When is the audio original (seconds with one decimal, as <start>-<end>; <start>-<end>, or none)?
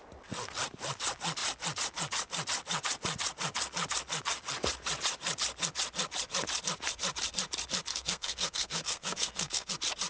0.0-7.9; 9.7-10.1